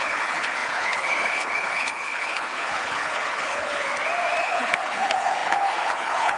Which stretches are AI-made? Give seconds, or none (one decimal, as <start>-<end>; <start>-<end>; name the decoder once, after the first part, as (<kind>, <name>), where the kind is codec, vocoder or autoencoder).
0.0-3.9 (codec, HILCodec); 4.4-6.4